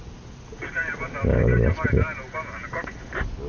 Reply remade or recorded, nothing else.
recorded